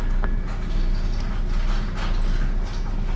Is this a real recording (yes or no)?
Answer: yes